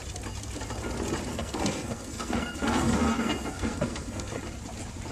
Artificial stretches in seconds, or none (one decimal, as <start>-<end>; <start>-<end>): 1.3-4.4